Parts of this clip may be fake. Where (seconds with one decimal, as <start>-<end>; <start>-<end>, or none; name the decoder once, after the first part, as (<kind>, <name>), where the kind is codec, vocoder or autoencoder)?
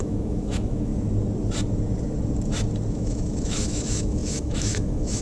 0.0-0.9 (autoencoder, DAC-VAE); 2.9-5.2